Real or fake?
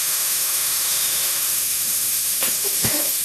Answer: fake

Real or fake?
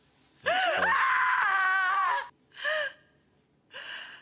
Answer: real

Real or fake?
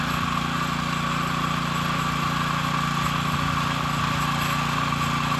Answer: real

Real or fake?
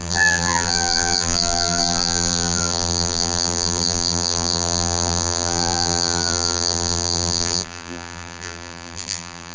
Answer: fake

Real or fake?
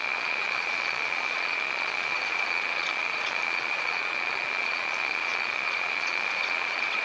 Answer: fake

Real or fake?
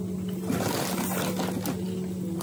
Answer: real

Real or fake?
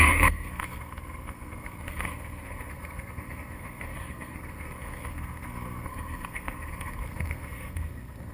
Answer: fake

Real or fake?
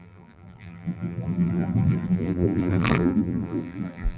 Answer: fake